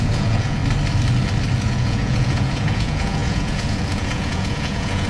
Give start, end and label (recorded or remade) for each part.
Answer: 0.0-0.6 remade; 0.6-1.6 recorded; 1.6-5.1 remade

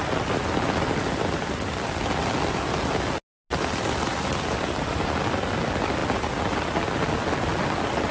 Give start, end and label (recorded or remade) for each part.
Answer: 0.0-3.5 recorded; 3.5-4.9 remade; 4.9-8.1 recorded